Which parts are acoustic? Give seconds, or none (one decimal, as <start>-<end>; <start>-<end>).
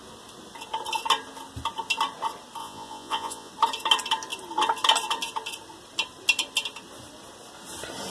0.0-2.6; 3.5-8.1